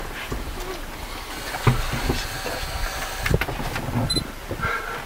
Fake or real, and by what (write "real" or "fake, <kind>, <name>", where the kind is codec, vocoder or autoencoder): real